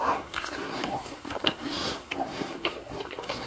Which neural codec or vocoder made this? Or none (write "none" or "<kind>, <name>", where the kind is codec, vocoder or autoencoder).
codec, SNAC